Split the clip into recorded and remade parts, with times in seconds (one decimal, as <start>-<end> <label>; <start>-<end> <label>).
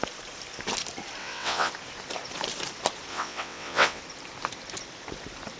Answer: 0.0-1.2 recorded; 1.2-1.7 remade; 1.7-3.1 recorded; 3.1-4.0 remade; 4.0-5.6 recorded